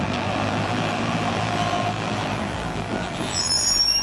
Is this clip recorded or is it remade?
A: remade